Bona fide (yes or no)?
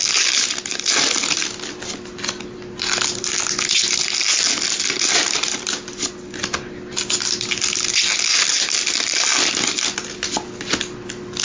yes